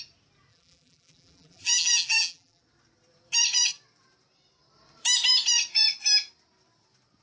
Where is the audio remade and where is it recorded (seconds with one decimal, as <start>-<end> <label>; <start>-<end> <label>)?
0.0-0.5 recorded; 0.5-2.6 remade; 2.6-7.2 recorded